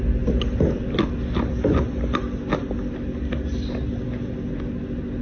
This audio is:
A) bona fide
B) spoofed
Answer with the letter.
A